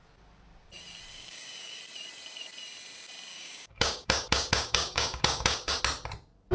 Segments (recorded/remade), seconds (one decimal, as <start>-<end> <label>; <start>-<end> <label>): 0.0-1.1 recorded; 1.1-1.8 remade; 1.8-3.3 recorded; 3.3-5.8 remade; 5.8-6.5 recorded